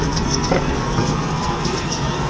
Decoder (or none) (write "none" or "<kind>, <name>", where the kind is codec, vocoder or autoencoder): codec, SNAC